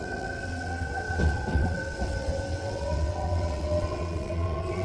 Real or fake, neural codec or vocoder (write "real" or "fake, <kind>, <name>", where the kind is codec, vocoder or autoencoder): fake, vocoder, WaveNeXt